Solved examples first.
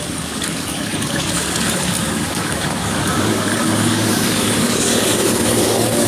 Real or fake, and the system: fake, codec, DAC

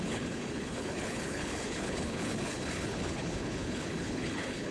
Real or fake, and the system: fake, codec, HILCodec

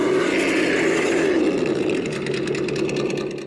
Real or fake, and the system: real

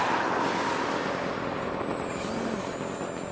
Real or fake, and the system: real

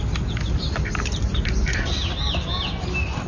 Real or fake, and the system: real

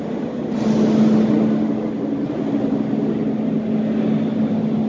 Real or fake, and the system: real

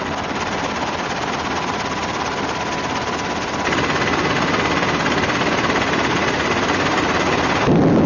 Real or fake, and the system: real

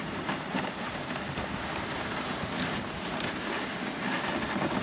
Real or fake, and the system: real